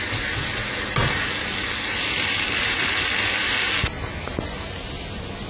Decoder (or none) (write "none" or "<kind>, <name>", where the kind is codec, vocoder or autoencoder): none